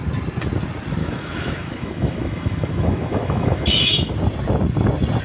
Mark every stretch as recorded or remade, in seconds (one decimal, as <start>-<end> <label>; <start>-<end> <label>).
0.0-1.0 recorded; 1.0-4.1 remade; 4.1-5.2 recorded